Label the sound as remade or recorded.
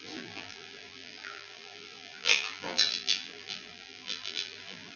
remade